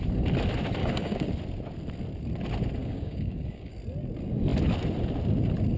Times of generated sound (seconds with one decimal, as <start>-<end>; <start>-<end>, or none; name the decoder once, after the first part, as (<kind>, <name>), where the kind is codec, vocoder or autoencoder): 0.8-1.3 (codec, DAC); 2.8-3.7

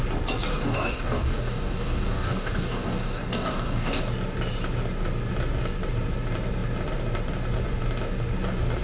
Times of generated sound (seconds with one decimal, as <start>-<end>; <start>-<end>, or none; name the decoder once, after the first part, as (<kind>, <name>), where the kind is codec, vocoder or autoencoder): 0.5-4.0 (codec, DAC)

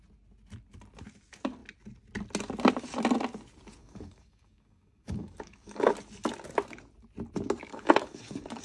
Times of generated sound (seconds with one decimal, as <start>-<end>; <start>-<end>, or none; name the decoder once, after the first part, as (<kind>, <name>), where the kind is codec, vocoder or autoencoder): 3.8-5.9 (codec, DAC); 7.7-8.6

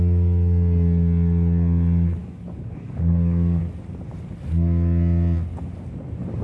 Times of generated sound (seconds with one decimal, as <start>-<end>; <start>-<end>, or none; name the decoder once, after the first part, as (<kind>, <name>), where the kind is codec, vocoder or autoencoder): 2.2-3.6 (codec, DAC)

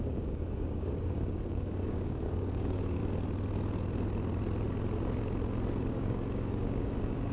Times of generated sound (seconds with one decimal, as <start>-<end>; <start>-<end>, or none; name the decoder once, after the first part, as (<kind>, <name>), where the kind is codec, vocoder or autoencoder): 0.0-3.0 (codec, DAC); 5.9-7.3

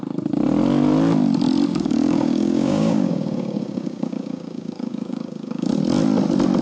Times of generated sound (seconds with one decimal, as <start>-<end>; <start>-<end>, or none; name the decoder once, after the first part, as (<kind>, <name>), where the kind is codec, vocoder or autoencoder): 1.7-5.7 (codec, DAC)